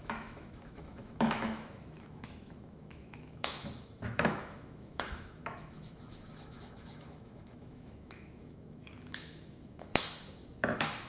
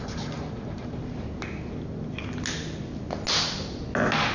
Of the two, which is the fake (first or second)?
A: first